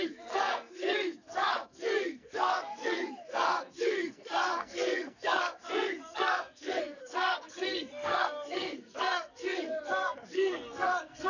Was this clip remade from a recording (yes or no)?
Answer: yes